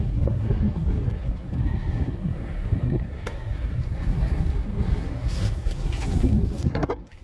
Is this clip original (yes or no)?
no